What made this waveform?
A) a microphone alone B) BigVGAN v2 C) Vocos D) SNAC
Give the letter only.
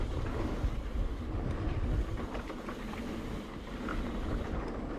A